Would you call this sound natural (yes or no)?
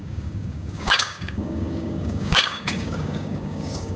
no